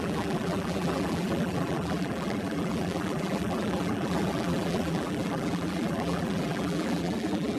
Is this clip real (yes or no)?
no